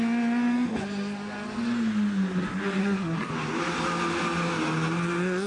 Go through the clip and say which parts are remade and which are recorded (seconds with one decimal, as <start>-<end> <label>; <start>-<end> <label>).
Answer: 0.0-2.8 recorded; 2.8-3.3 remade; 3.3-5.5 recorded